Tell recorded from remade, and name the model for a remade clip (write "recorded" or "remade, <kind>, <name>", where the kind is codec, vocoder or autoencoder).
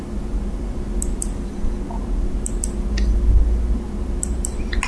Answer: recorded